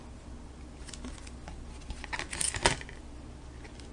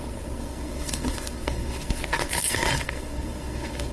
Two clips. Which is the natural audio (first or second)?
first